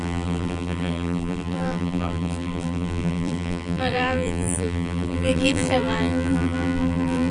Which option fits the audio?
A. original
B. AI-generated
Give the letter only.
B